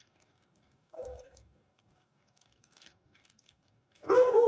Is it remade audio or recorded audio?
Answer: remade